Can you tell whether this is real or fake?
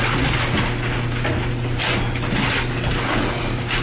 real